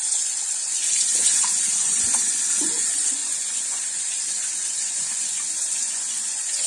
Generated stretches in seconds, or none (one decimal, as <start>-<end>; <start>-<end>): 0.0-6.7